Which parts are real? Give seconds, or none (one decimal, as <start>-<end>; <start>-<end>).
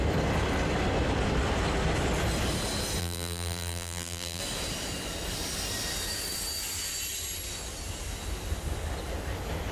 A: 0.0-3.0; 4.4-9.7